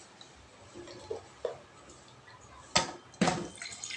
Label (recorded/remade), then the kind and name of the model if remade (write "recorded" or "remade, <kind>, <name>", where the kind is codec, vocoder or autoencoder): recorded